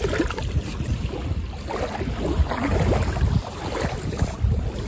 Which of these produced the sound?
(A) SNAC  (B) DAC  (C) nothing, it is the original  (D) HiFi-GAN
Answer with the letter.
C